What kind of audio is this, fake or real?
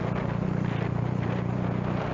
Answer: real